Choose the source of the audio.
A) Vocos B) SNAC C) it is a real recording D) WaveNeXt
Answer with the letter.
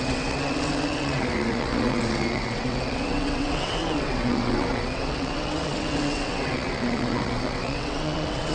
D